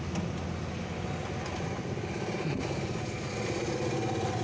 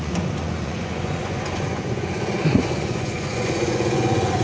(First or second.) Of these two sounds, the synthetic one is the second